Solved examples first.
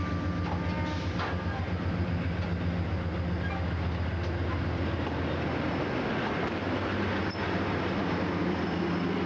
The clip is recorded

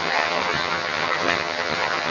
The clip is remade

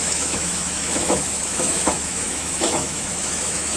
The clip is remade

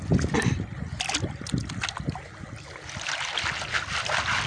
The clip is recorded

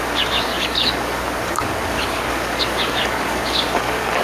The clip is remade